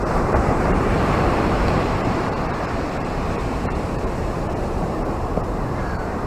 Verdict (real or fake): fake